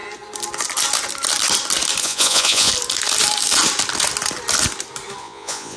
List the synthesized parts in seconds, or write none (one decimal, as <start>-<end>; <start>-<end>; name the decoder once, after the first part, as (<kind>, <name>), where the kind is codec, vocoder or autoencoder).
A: 2.0-2.7 (vocoder, Vocos); 5.2-5.8